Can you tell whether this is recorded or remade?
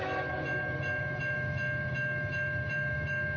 remade